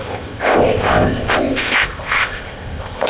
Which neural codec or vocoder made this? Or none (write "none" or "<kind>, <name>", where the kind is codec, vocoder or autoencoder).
codec, ZipCodec